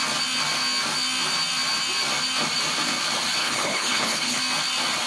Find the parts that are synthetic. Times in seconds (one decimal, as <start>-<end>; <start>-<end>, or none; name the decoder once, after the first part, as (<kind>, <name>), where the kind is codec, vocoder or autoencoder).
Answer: 3.4-4.4 (codec, HILCodec)